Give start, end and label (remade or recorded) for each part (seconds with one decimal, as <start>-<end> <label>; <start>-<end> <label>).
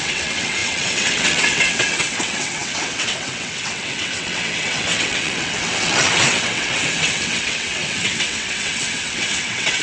0.0-9.8 remade